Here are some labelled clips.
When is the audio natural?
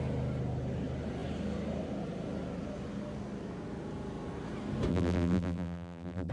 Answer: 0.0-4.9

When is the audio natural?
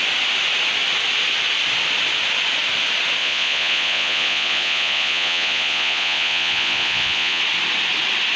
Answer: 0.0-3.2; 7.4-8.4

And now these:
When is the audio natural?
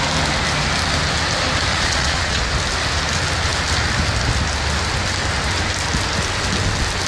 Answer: 0.0-1.7; 2.5-7.1